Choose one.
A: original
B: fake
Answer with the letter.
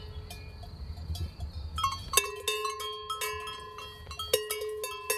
A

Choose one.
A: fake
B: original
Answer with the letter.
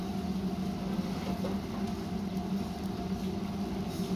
B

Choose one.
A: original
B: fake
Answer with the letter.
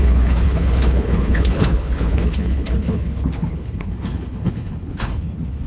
B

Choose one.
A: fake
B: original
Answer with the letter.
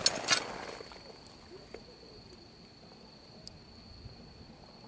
B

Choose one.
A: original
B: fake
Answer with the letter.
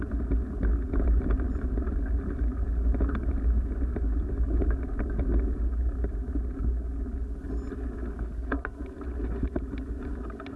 A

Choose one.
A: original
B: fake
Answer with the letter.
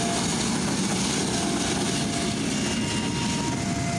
A